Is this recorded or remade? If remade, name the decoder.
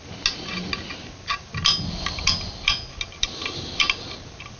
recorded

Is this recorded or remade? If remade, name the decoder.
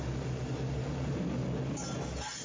recorded